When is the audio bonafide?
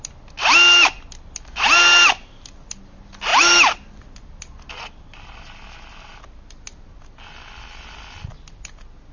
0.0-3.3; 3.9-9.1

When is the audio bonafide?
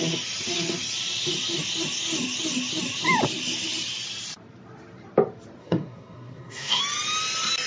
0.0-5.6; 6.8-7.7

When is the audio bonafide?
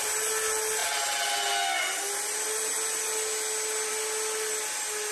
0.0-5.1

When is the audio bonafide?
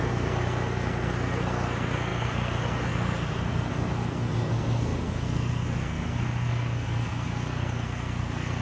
none